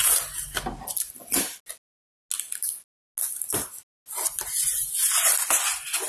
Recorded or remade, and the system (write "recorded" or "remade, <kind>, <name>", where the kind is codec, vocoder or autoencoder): recorded